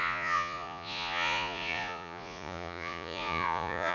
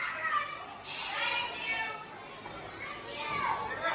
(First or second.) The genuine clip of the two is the second